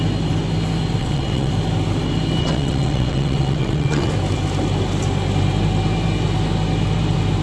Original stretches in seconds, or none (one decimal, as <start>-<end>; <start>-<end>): 0.0-1.0; 1.5-2.4; 4.1-7.4